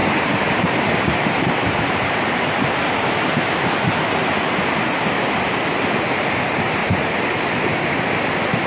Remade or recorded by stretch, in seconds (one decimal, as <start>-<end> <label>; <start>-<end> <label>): 0.0-2.7 remade; 2.7-6.8 recorded; 6.8-7.8 remade; 7.8-8.7 recorded